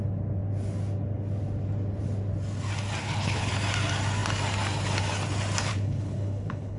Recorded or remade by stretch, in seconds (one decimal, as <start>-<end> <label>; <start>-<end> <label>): 0.0-3.0 recorded; 3.0-3.5 remade; 3.5-5.7 recorded; 5.7-6.8 remade